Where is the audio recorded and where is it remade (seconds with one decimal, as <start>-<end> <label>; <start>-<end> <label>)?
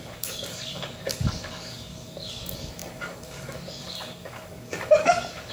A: 0.0-5.5 remade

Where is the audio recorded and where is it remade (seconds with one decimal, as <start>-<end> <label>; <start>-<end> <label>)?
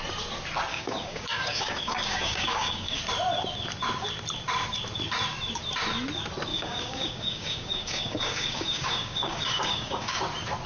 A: 0.0-0.7 recorded; 0.7-3.0 remade; 3.0-6.5 recorded; 6.5-10.2 remade; 10.2-10.7 recorded